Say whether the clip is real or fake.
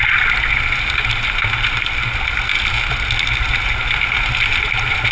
real